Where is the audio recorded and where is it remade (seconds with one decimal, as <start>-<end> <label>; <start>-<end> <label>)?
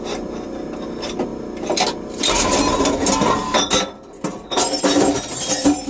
0.0-5.9 recorded